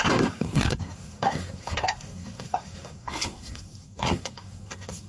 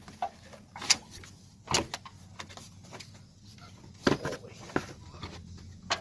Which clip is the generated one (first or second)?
first